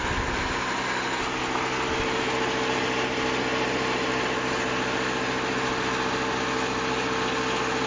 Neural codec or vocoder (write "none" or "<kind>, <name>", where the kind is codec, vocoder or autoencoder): none